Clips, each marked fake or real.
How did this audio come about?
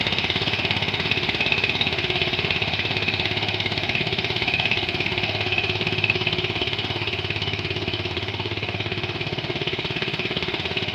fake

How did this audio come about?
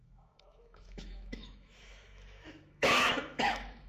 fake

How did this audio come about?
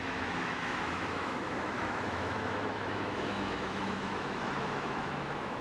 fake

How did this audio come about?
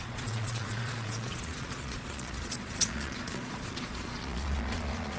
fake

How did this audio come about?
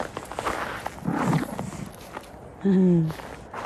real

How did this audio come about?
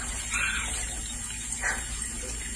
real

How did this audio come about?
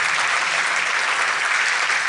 real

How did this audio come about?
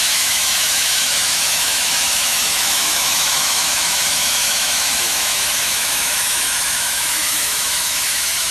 fake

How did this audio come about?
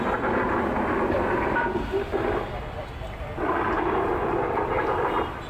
fake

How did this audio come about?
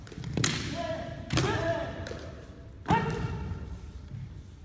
fake